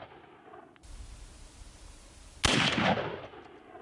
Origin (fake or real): real